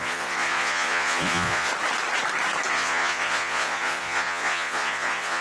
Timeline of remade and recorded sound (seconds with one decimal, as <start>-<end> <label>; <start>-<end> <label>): 0.0-1.7 remade; 1.7-2.7 recorded; 2.7-5.4 remade